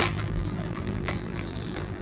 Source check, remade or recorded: remade